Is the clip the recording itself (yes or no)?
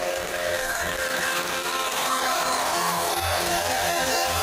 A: no